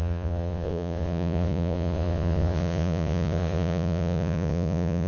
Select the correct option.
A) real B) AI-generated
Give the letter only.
B